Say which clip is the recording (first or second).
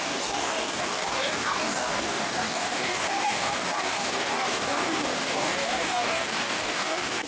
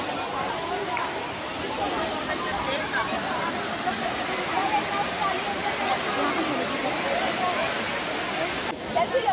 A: second